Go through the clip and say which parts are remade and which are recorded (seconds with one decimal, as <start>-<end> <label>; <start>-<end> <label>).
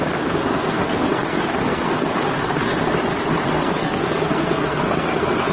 0.0-2.7 remade; 2.7-3.5 recorded; 3.5-5.5 remade